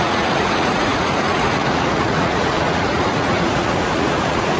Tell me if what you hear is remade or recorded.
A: remade